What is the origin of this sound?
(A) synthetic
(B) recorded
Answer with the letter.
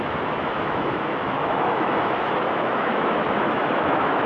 A